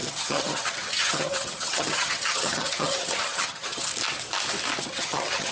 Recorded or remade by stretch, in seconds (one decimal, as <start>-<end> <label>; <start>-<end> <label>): 0.0-3.9 remade; 3.9-4.8 recorded; 4.8-5.5 remade